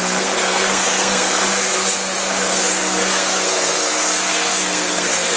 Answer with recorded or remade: remade